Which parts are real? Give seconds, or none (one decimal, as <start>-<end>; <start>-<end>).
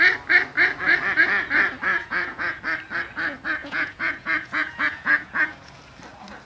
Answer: 0.0-1.9; 2.6-3.6; 5.8-6.5